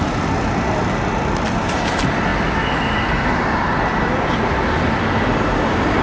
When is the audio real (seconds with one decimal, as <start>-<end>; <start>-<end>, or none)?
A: 0.0-6.0